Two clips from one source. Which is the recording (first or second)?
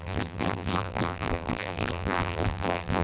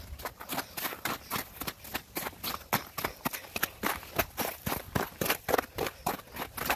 second